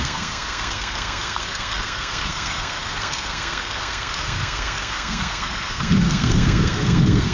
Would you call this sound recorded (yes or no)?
no